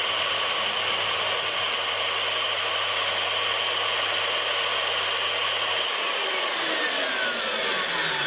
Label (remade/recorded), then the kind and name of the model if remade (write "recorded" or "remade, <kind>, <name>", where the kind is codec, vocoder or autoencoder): recorded